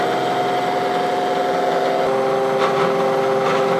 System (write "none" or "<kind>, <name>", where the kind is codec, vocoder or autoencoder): none